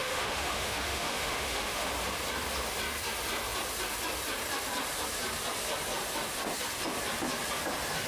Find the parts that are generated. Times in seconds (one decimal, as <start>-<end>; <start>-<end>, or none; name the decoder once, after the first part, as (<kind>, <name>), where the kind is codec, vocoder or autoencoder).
0.0-1.9 (autoencoder, DAC-VAE)